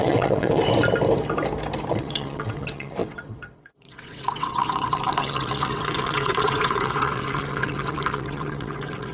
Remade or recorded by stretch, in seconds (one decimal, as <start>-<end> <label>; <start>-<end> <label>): 0.0-0.6 remade; 0.6-1.9 recorded; 1.9-9.1 remade